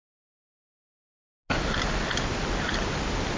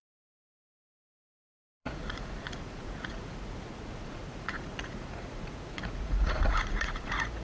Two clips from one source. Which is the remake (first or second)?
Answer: second